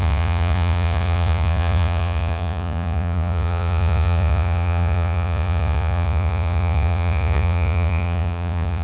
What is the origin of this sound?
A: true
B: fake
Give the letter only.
B